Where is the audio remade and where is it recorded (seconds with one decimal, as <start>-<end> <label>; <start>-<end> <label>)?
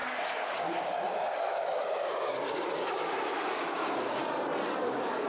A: 0.0-4.2 remade; 4.2-4.8 recorded; 4.8-5.3 remade